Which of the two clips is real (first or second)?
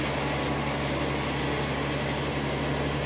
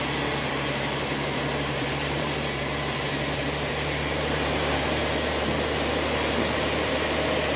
first